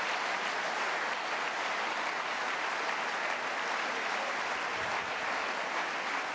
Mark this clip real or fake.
real